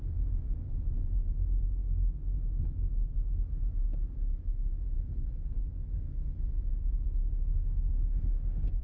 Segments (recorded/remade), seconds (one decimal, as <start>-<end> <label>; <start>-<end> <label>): 0.0-7.5 recorded; 7.5-8.0 remade; 8.0-8.8 recorded